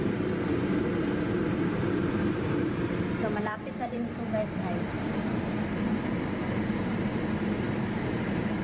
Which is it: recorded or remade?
remade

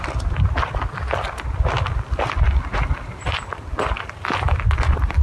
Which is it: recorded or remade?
remade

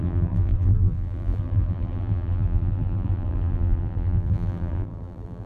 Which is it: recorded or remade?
remade